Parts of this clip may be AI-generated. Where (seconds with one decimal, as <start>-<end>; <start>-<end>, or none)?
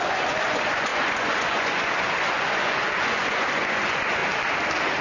0.0-4.2